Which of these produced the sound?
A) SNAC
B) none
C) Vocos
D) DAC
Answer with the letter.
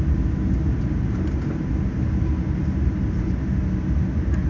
B